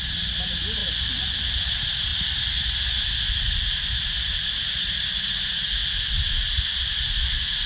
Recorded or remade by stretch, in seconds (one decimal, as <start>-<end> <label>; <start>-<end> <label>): 0.0-0.8 recorded; 0.8-1.7 remade; 1.7-2.1 recorded; 2.1-3.2 remade; 3.2-7.7 recorded